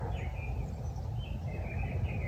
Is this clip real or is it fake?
real